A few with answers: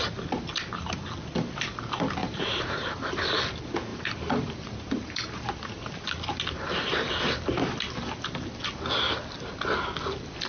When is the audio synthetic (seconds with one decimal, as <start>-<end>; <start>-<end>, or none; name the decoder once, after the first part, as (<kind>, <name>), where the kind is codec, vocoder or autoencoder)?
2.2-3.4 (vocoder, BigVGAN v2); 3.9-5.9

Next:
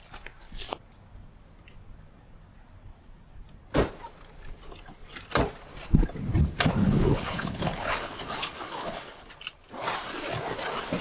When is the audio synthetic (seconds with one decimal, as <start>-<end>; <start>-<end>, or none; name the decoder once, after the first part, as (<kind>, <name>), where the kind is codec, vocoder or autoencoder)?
6.8-9.3 (codec, HILCodec)

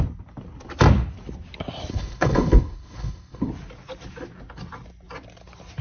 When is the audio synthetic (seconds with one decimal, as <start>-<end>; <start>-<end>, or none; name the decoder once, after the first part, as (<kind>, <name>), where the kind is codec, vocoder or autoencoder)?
1.9-3.5 (codec, HILCodec)

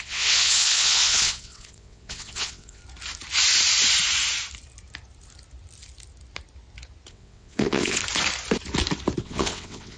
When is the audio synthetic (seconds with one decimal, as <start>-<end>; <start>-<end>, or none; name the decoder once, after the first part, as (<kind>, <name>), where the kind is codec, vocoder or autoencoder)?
0.0-2.8 (vocoder, WaveNeXt); 7.1-8.0; 9.2-10.0